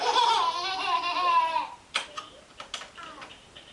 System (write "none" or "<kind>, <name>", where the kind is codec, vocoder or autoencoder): none